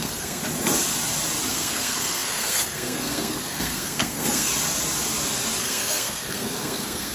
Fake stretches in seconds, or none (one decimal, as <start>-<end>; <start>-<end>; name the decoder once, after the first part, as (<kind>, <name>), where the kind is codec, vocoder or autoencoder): 0.0-0.4 (codec, SNAC); 1.5-4.5; 5.6-7.1